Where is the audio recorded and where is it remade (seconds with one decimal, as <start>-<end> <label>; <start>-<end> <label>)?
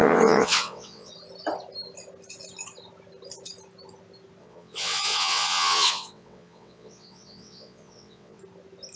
0.0-1.1 remade; 1.1-4.4 recorded; 4.4-8.4 remade; 8.4-9.0 recorded